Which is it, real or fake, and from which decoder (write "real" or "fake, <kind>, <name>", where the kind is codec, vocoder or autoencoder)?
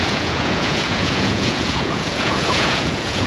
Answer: fake, vocoder, Vocos